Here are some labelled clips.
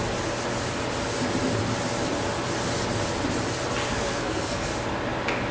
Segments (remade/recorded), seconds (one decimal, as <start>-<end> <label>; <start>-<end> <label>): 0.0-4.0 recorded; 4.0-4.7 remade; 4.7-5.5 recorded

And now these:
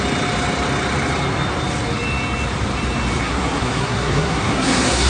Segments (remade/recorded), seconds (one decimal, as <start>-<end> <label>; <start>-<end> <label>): 0.0-3.2 recorded; 3.2-5.1 remade

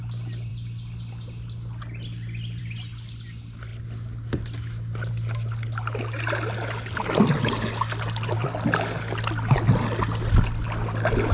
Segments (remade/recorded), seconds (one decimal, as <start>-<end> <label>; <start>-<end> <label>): 0.0-11.3 recorded

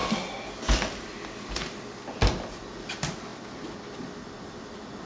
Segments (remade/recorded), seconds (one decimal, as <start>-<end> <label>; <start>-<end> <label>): 0.0-5.1 recorded

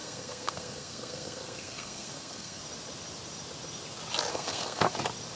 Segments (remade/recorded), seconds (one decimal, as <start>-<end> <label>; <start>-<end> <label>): 0.0-2.6 remade; 2.6-4.3 recorded; 4.3-4.9 remade; 4.9-5.4 recorded

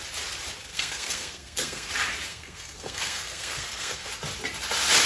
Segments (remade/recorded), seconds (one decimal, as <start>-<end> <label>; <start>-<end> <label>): 0.0-0.7 recorded; 0.7-1.9 remade; 1.9-2.3 recorded; 2.3-4.1 remade; 4.1-5.1 recorded

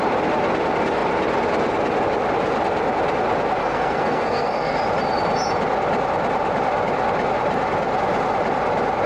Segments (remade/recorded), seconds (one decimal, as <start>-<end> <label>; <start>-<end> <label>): 0.0-3.6 recorded; 3.6-4.8 remade; 4.8-9.1 recorded